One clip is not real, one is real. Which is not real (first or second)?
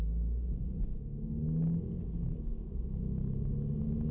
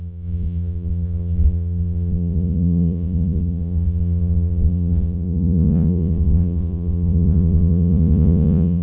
second